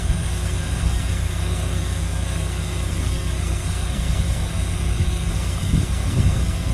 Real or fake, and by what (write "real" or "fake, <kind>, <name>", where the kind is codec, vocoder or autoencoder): fake, codec, SNAC